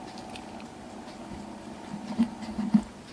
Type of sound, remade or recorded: recorded